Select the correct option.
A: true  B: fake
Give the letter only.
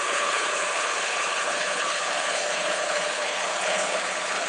B